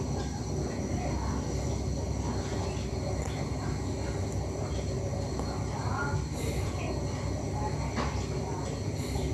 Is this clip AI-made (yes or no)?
no